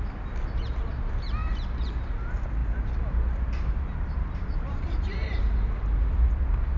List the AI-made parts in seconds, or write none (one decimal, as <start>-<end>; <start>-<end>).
1.4-1.9; 2.6-6.8